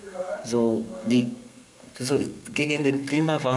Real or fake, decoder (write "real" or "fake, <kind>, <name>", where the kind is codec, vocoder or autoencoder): fake, codec, SNAC